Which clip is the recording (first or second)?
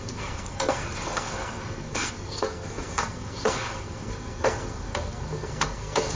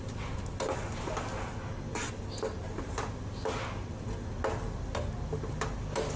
second